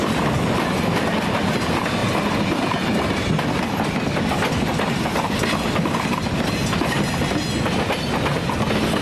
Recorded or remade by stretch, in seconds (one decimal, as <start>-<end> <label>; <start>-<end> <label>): 0.0-9.0 recorded